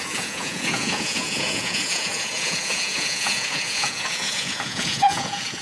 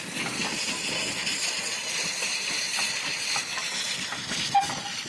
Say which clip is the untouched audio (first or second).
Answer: second